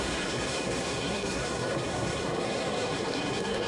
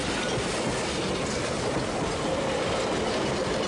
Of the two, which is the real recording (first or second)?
second